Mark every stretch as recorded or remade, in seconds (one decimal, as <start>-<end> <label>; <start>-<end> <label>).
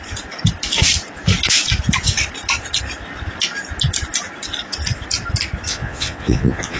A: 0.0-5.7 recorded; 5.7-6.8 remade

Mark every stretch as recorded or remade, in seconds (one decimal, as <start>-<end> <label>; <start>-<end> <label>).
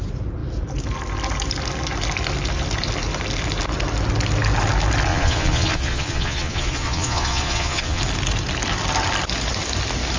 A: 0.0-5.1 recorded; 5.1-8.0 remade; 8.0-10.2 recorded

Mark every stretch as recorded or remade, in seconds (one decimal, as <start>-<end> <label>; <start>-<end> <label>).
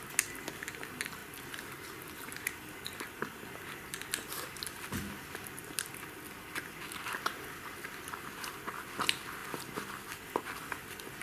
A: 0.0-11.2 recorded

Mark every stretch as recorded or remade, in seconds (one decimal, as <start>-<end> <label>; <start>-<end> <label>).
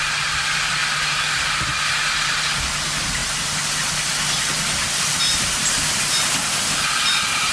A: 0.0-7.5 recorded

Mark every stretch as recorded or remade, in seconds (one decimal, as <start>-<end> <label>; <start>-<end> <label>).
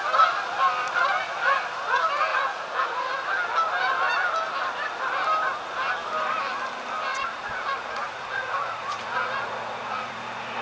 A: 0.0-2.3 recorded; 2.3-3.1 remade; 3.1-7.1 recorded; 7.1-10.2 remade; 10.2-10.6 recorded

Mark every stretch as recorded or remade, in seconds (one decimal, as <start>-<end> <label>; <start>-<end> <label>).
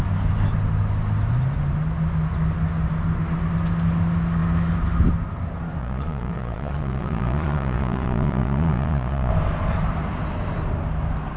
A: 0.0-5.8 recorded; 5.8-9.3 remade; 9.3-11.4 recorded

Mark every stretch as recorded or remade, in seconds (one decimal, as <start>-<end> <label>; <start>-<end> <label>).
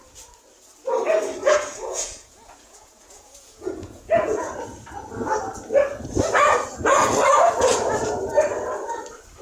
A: 0.0-1.4 recorded; 1.4-4.5 remade; 4.5-9.4 recorded